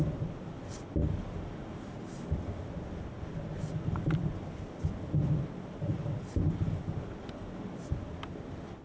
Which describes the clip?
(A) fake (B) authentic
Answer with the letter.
B